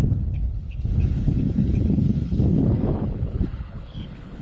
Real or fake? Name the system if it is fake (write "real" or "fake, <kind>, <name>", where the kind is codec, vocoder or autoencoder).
fake, codec, HILCodec